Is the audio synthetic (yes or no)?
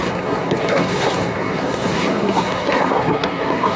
yes